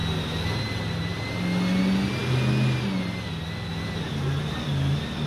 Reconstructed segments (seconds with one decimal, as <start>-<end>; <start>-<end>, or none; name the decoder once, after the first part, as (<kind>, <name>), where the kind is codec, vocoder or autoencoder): none

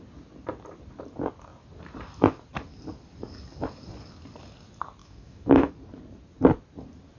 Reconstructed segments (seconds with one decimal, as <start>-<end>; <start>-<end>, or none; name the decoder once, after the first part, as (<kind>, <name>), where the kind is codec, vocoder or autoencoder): 5.0-5.7 (autoencoder, DAC-VAE)

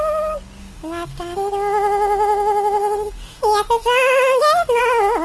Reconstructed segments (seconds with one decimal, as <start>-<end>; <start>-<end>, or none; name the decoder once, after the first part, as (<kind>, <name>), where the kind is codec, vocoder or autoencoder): 0.6-1.5 (autoencoder, DAC-VAE); 2.8-4.8

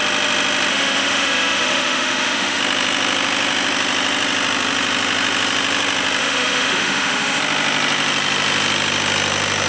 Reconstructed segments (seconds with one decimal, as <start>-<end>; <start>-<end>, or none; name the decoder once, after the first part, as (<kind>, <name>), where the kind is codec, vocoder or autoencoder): 0.7-2.6 (autoencoder, DAC-VAE); 6.2-7.4

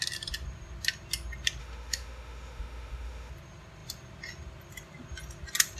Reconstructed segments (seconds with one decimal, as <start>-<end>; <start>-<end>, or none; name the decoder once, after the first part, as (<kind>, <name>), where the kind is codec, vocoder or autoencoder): 1.6-3.3 (autoencoder, DAC-VAE)

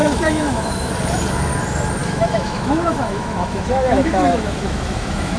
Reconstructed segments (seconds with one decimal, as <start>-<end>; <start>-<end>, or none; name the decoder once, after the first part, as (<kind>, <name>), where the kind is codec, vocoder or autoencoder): 0.0-0.9 (autoencoder, DAC-VAE); 2.0-5.4

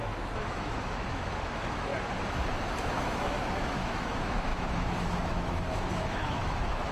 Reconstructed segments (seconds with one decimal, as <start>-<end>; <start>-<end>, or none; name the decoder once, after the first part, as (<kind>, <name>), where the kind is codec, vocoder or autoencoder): 0.0-1.9 (autoencoder, DAC-VAE); 2.8-6.9

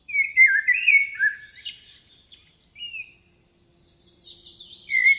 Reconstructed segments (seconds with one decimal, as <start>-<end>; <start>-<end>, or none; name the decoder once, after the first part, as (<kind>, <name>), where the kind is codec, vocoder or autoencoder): none